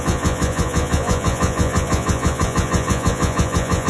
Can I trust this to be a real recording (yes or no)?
no